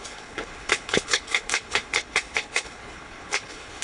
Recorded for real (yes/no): no